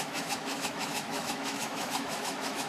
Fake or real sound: fake